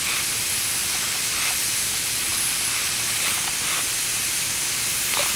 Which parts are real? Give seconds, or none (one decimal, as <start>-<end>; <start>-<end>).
0.0-0.8; 1.5-2.3